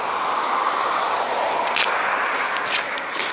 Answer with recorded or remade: recorded